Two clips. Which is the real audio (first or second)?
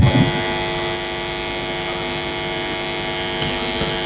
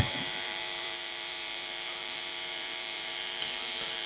first